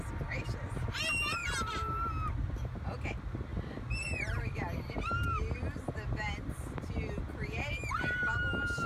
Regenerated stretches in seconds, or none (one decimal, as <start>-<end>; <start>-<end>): 3.5-4.8